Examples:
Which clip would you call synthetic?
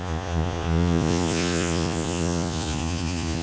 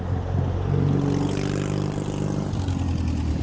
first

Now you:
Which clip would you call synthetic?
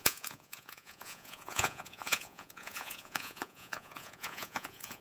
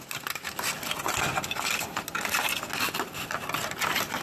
first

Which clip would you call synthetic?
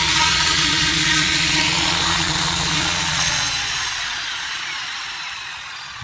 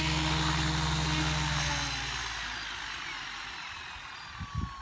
first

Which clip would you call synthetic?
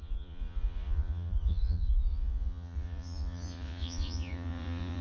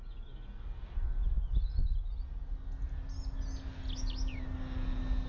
first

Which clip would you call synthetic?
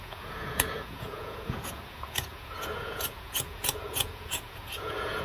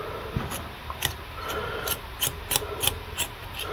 first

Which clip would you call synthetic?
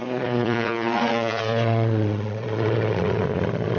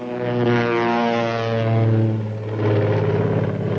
first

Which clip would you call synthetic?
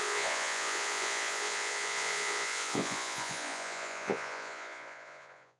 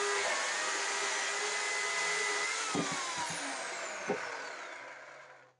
first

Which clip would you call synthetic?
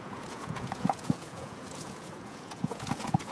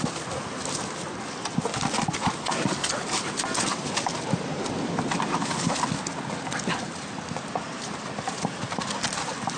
first